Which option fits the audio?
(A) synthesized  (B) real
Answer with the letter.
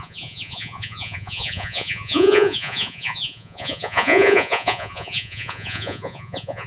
A